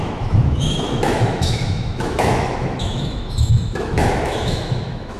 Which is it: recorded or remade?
remade